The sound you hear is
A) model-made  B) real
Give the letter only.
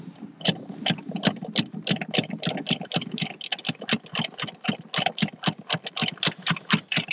B